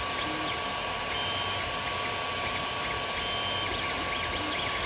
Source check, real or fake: real